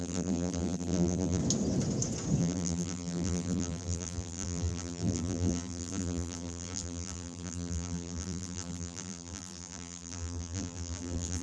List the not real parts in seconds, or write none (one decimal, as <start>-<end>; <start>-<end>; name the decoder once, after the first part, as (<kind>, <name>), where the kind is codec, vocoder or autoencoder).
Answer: 0.0-1.4 (vocoder, BigVGAN v2); 2.4-11.4